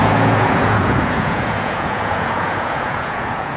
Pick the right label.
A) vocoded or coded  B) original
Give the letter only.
A